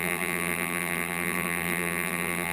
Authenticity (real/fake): fake